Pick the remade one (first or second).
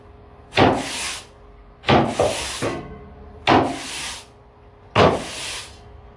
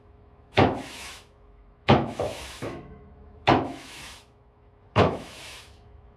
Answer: second